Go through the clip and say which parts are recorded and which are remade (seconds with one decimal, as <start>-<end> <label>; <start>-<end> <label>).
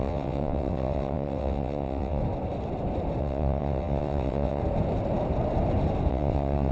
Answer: 0.0-2.2 remade; 2.2-3.2 recorded; 3.2-4.6 remade; 4.6-6.1 recorded; 6.1-6.7 remade